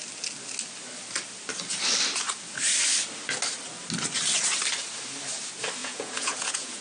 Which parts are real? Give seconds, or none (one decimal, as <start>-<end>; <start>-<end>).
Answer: 0.0-5.8